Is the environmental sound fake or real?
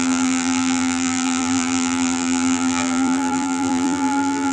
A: fake